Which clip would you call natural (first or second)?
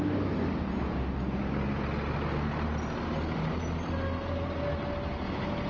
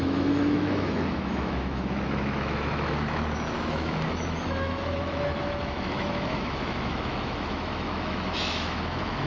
first